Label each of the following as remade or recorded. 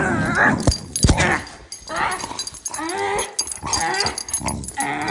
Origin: recorded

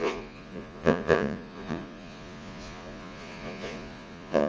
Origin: remade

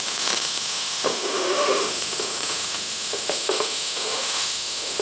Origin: remade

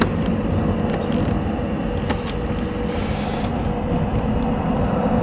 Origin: recorded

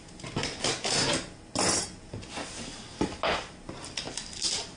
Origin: recorded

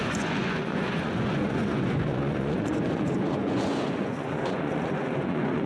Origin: remade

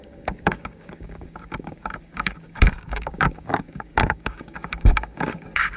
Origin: remade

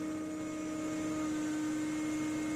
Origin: recorded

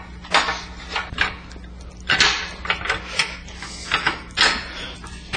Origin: recorded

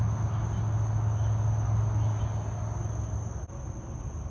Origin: recorded